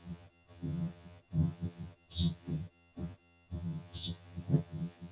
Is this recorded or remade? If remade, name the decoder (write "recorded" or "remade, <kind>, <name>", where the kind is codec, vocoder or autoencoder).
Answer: remade, vocoder, HiFi-GAN